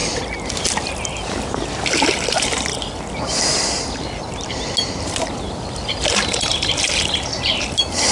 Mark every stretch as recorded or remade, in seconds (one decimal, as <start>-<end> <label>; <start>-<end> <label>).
0.0-2.1 recorded; 2.1-2.7 remade; 2.7-7.6 recorded; 7.6-8.1 remade